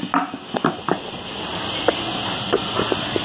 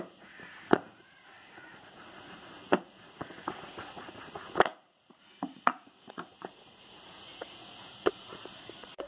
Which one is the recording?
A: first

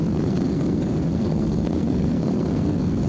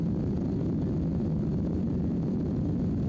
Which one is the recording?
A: second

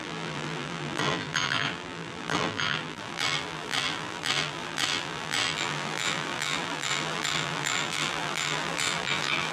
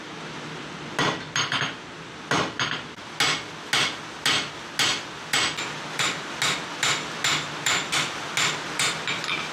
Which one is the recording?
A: second